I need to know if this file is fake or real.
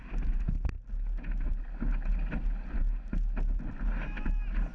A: real